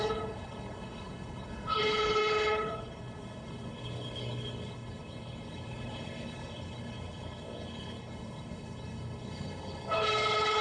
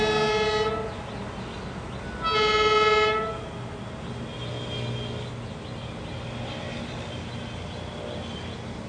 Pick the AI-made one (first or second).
first